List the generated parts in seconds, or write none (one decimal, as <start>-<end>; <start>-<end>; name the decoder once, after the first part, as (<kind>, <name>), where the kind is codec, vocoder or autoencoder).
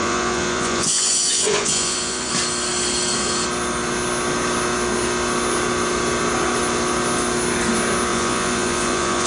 0.0-2.3 (vocoder, Vocos); 8.1-9.3